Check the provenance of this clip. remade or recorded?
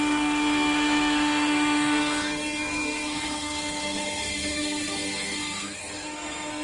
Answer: remade